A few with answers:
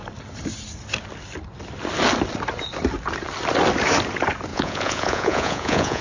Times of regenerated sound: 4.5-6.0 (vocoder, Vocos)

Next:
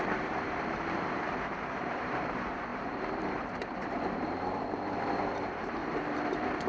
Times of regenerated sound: 0.0-5.8 (vocoder, BigVGAN v2)

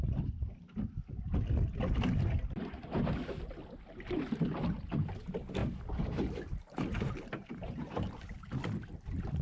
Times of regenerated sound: 5.6-8.2 (vocoder, BigVGAN v2)